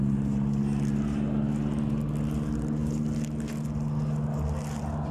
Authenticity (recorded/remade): recorded